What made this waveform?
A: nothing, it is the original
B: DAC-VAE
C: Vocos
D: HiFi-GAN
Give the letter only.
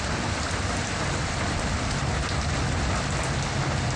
A